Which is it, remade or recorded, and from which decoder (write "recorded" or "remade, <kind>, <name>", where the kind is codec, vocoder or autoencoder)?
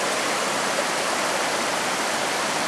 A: remade, vocoder, BigVGAN v2